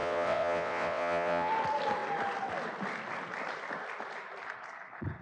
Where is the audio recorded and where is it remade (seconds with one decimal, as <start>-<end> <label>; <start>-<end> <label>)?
0.0-1.5 remade; 1.5-5.2 recorded